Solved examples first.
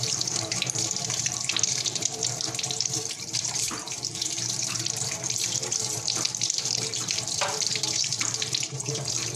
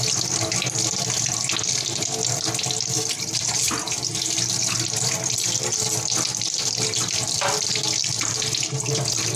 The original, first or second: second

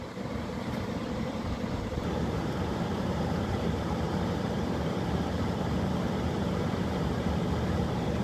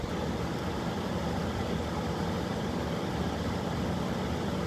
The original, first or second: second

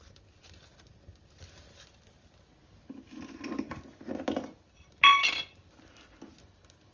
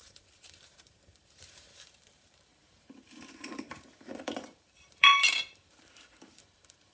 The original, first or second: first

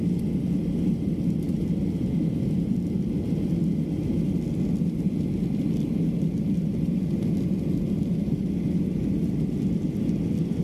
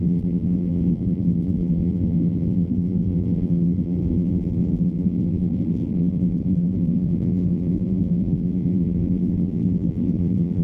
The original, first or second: first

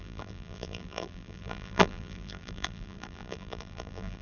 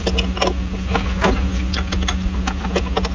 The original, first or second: second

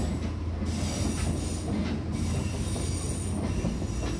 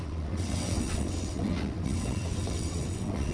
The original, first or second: first